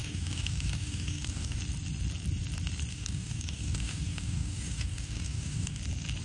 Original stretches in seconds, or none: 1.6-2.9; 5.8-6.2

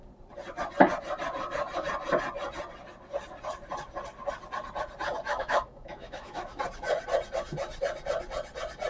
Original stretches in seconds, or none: 0.0-5.3; 6.6-8.9

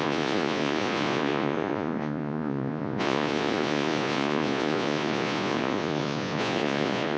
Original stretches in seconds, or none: none

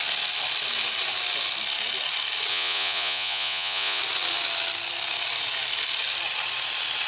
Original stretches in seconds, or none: 0.0-2.5; 4.0-7.1

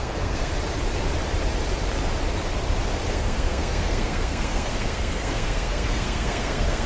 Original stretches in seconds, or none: 0.5-3.1

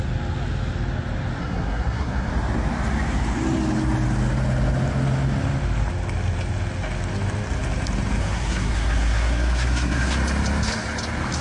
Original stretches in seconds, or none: 0.0-1.4; 2.3-8.2; 10.1-11.4